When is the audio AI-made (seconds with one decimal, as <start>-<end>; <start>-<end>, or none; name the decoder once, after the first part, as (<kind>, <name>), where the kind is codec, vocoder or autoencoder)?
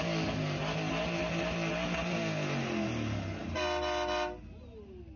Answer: none